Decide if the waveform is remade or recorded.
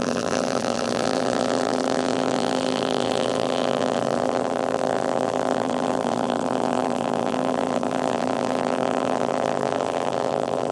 remade